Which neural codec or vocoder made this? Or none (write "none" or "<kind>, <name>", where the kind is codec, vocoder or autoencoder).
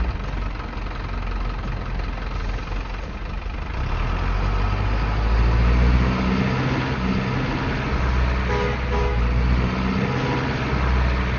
none